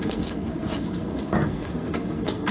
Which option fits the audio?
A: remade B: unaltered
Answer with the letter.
A